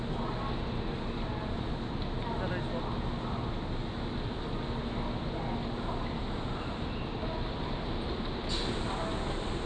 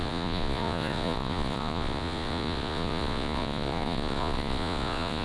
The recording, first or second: first